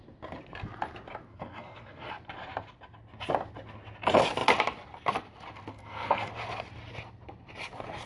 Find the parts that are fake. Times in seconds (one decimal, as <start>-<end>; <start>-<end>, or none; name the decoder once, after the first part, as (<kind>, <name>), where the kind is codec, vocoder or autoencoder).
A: 1.3-2.1 (codec, SNAC); 5.7-6.3